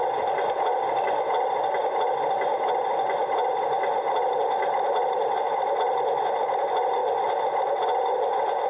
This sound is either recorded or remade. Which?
recorded